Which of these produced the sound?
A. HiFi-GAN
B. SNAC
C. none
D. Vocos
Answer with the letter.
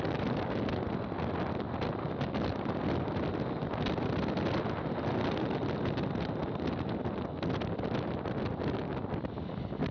C